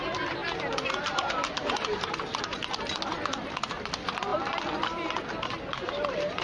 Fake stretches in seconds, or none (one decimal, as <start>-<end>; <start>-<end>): 0.4-2.8